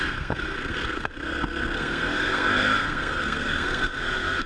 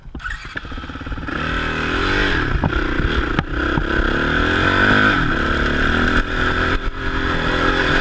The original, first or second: second